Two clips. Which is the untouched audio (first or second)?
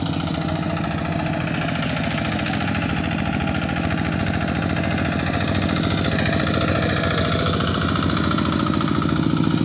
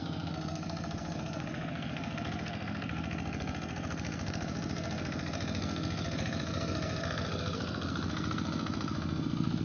first